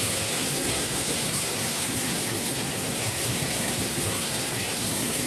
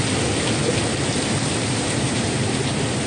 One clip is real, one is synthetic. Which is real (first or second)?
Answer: second